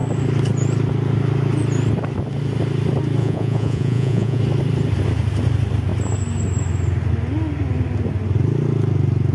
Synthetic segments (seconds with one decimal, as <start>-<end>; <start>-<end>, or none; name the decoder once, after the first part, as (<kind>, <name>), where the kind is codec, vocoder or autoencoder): 3.2-4.4 (vocoder, Vocos)